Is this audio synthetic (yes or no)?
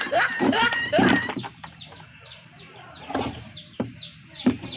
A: yes